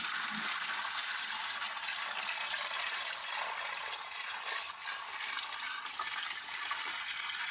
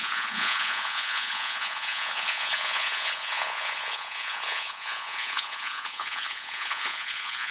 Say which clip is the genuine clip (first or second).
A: first